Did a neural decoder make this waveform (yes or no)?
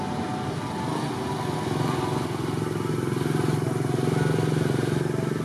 no